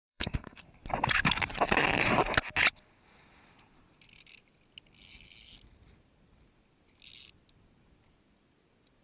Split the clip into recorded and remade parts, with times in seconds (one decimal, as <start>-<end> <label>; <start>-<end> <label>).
0.0-0.6 remade; 0.6-9.0 recorded